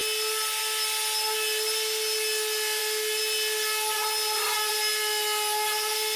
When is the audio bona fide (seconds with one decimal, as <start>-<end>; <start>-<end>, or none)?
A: 0.0-6.2